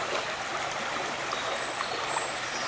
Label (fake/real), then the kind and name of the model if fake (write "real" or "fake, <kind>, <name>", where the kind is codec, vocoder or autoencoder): real